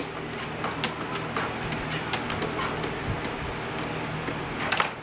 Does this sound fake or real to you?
real